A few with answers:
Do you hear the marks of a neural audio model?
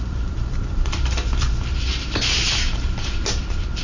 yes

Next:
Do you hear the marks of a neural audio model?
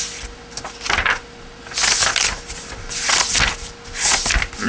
no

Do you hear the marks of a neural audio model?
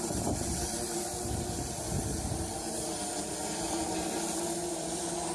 yes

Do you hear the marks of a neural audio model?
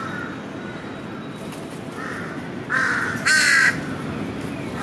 no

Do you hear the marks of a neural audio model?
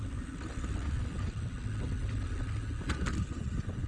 no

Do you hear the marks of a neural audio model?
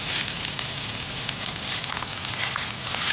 no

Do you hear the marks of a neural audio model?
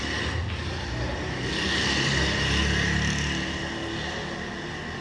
no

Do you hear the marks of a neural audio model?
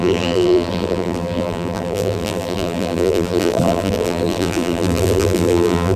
yes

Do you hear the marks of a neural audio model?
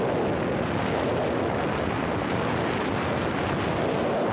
no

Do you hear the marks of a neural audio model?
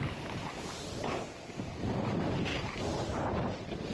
yes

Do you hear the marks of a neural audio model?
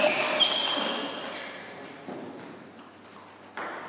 no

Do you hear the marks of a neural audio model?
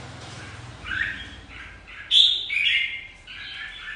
yes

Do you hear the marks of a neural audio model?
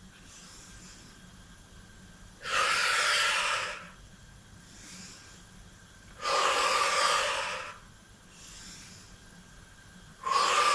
no